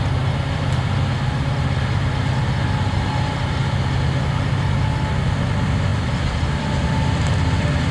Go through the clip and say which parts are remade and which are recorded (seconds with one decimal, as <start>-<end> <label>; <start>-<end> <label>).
0.0-7.9 recorded